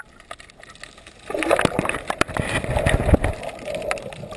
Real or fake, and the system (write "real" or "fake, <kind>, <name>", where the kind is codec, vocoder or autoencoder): real